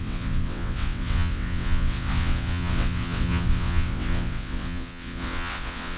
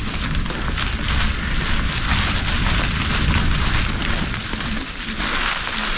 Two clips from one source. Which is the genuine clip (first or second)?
second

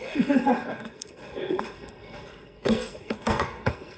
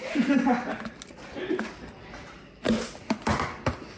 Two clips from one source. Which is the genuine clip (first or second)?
second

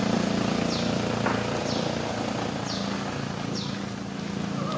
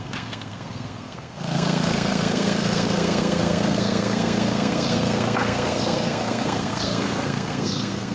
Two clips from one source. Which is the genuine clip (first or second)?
first